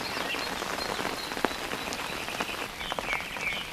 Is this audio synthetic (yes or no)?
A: no